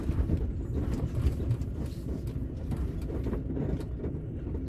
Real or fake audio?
real